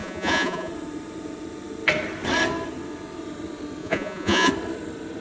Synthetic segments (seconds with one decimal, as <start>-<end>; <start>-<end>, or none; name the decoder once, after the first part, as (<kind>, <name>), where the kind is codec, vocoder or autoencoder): 0.0-0.7 (vocoder, Vocos); 3.8-4.5